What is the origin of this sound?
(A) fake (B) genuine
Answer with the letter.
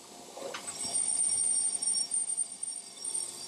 A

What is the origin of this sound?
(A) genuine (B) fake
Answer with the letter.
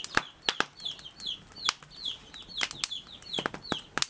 A